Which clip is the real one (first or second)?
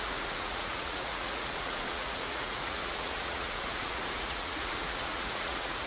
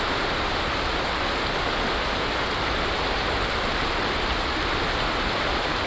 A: second